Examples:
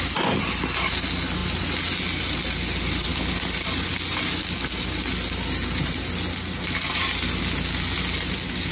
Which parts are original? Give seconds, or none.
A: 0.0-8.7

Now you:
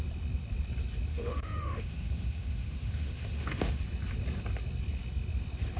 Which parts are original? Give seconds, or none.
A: 0.0-1.1; 3.8-5.8

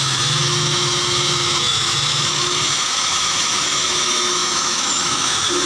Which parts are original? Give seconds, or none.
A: none

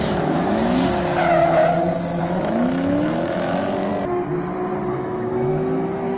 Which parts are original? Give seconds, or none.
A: 0.6-1.2; 1.6-2.2; 3.9-4.9

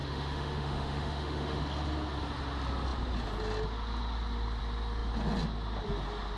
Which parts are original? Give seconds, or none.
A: 1.6-6.4